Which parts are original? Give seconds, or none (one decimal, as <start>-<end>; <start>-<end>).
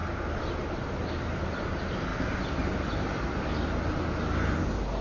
0.0-5.0